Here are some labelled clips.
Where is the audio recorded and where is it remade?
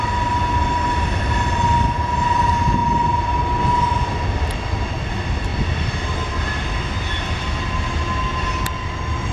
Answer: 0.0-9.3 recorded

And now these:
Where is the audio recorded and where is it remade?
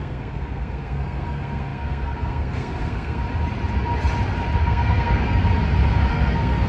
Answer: 0.0-3.2 remade; 3.2-4.6 recorded; 4.6-5.4 remade; 5.4-6.1 recorded; 6.1-6.7 remade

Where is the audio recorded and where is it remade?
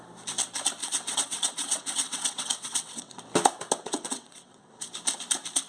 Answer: 0.0-0.8 recorded; 0.8-3.2 remade; 3.2-3.8 recorded; 3.8-4.9 remade; 4.9-5.7 recorded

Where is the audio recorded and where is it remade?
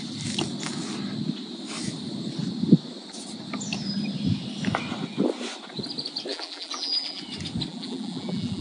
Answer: 0.0-6.3 recorded; 6.3-7.2 remade; 7.2-7.7 recorded; 7.7-8.6 remade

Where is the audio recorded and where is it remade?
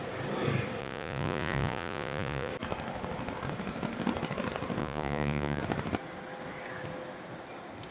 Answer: 0.0-0.8 recorded; 0.8-2.5 remade; 2.5-4.8 recorded; 4.8-5.6 remade; 5.6-7.9 recorded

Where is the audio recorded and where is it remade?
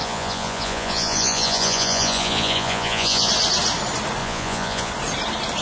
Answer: 0.0-3.3 remade; 3.3-4.2 recorded; 4.2-4.9 remade; 4.9-5.6 recorded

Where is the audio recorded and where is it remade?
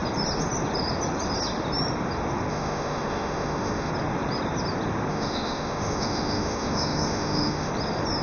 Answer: 0.0-2.5 recorded; 2.5-3.9 remade; 3.9-5.1 recorded; 5.1-7.7 remade; 7.7-8.2 recorded